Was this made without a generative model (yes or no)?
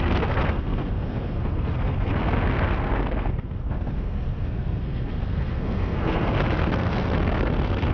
no